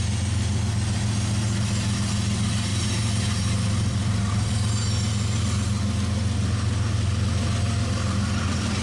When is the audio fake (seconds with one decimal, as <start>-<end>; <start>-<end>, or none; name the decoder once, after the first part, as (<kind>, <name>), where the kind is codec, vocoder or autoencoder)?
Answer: 2.7-4.5 (vocoder, BigVGAN v2)